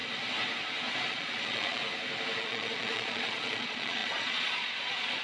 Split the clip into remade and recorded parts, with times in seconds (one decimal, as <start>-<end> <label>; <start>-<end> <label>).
0.0-1.1 recorded; 1.1-1.8 remade; 1.8-2.4 recorded; 2.4-5.2 remade